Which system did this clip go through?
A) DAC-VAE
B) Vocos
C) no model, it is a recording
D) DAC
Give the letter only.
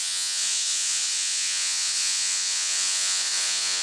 B